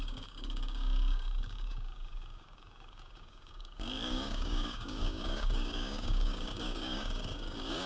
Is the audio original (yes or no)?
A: no